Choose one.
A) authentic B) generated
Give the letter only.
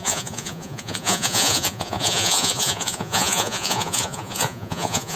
B